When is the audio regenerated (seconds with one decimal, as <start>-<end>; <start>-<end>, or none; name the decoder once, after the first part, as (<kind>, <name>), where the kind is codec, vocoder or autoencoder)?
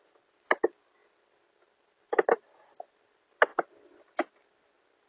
none